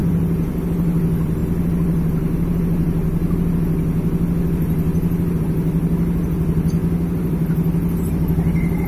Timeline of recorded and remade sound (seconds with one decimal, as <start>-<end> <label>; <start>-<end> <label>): 0.0-0.5 remade; 0.5-8.9 recorded